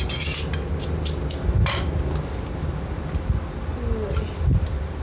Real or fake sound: fake